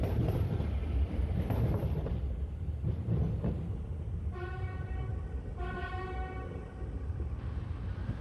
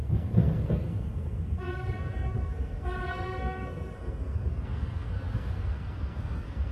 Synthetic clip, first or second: second